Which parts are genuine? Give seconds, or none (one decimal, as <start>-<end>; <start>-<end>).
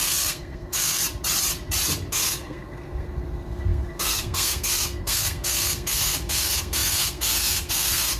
1.0-2.1